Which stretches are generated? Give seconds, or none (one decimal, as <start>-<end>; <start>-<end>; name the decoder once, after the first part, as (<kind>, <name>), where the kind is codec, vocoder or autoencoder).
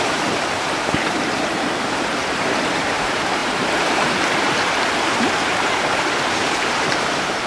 0.0-7.5 (vocoder, BigVGAN v2)